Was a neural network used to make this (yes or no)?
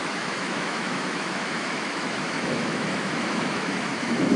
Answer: yes